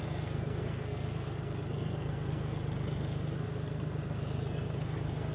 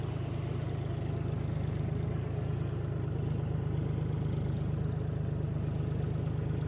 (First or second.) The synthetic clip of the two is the first